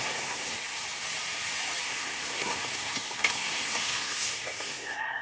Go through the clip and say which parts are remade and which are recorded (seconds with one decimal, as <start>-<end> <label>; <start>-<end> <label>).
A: 0.0-0.8 remade; 0.8-1.8 recorded; 1.8-5.2 remade